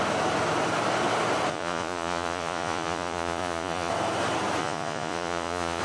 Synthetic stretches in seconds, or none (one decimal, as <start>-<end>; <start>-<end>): 1.5-3.9; 4.6-5.8